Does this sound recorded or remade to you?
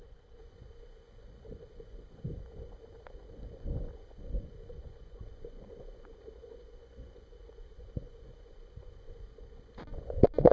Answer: remade